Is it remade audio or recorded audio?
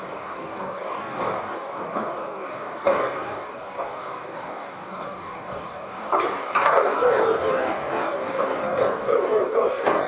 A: remade